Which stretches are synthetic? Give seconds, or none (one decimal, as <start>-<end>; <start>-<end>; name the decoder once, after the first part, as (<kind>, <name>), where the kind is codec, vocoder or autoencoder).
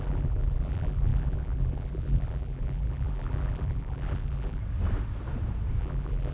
0.0-4.6 (vocoder, BigVGAN v2); 5.8-6.3